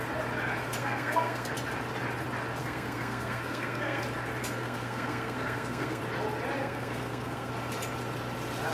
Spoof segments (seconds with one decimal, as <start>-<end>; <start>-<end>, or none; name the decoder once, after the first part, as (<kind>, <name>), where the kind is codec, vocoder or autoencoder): 0.8-1.5 (codec, SNAC); 2.6-4.0; 4.4-6.0; 6.6-7.5